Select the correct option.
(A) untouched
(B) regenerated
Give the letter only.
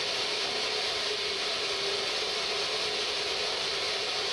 A